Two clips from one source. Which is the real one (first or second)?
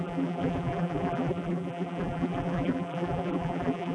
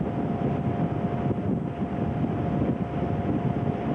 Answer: second